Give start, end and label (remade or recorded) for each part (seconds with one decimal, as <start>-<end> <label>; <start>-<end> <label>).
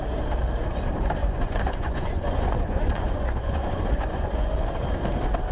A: 0.0-1.2 recorded; 1.2-4.5 remade; 4.5-5.5 recorded